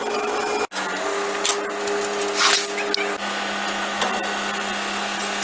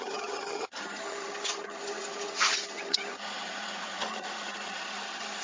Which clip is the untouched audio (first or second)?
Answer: first